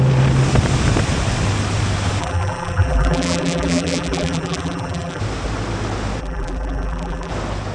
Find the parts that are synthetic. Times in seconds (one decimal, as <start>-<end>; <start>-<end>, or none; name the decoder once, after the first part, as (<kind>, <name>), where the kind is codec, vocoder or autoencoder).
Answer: 2.2-5.2 (vocoder, BigVGAN v2); 6.2-7.3